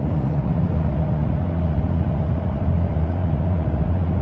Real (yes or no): no